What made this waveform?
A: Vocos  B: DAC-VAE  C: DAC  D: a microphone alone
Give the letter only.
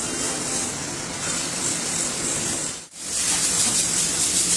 D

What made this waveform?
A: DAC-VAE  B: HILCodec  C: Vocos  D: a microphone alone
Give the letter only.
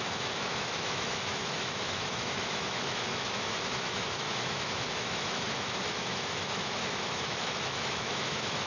A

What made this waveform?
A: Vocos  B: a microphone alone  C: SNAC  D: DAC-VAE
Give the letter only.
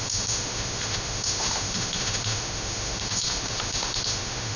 D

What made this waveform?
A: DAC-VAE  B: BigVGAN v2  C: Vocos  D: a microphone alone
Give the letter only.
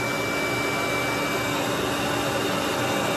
D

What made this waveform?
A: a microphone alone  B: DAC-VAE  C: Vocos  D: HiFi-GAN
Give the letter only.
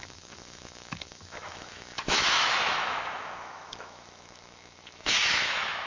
B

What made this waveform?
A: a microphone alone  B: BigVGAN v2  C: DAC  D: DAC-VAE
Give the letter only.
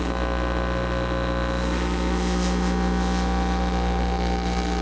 D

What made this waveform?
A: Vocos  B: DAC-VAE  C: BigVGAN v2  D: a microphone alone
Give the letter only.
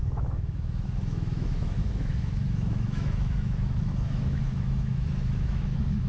B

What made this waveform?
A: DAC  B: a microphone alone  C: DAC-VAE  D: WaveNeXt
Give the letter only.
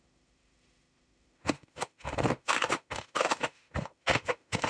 C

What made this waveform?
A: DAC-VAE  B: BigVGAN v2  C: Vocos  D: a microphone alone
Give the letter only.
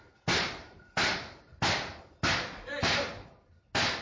D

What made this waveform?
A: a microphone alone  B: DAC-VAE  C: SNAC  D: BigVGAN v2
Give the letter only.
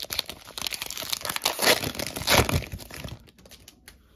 A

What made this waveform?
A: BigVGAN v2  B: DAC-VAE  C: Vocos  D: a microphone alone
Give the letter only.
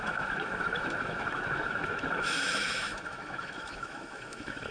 B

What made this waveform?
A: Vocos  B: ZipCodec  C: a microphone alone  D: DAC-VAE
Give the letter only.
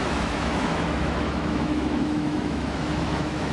D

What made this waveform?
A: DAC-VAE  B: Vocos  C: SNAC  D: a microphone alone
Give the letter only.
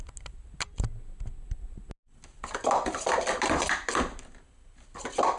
D